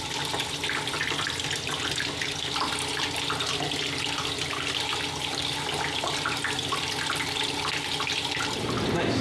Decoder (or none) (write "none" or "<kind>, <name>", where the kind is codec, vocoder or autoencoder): none